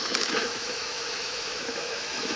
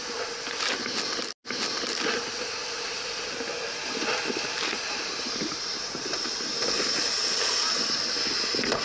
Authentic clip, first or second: second